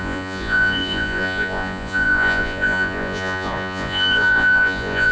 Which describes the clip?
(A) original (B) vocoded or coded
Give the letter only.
B